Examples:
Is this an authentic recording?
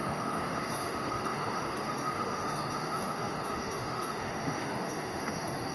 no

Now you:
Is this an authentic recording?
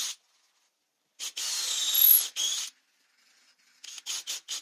yes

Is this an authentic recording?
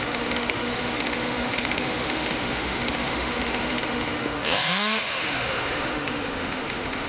no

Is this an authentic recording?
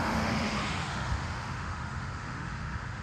no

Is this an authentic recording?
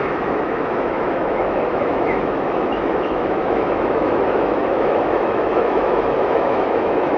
no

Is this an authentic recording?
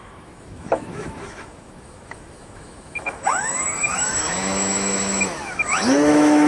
no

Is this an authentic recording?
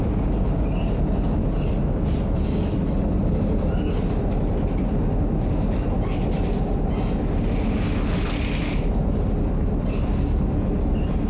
yes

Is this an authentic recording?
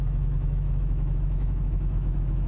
no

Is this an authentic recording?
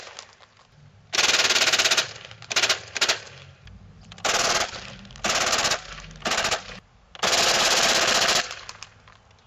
yes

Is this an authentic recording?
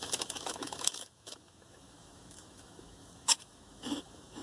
no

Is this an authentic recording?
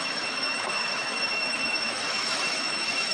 no